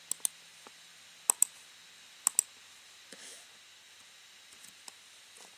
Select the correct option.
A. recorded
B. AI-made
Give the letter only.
A